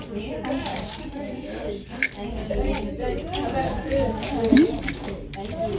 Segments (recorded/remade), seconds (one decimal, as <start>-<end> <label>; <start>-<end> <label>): 0.0-0.7 recorded; 0.7-2.5 remade; 2.5-3.6 recorded; 3.6-4.7 remade; 4.7-5.8 recorded